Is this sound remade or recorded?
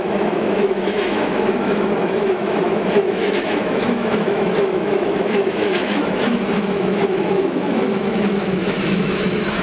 remade